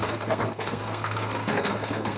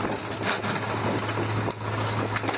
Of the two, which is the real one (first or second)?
second